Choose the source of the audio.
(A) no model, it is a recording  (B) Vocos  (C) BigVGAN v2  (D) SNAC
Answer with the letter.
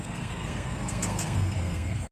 D